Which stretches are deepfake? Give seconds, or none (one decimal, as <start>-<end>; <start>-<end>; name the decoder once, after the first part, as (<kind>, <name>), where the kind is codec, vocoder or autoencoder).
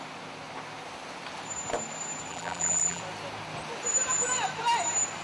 2.3-3.0 (vocoder, BigVGAN v2)